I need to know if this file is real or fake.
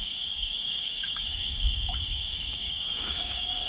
fake